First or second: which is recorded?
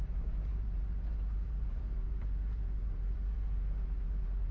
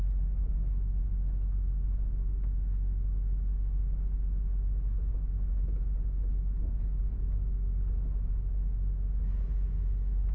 second